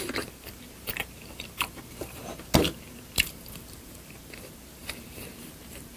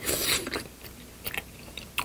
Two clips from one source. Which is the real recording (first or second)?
second